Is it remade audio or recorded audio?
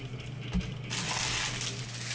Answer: recorded